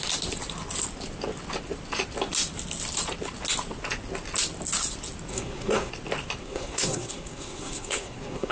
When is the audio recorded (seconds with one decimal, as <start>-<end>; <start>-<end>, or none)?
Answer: 0.0-5.3; 5.9-6.4